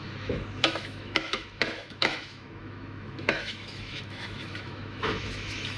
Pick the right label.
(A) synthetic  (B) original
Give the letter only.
A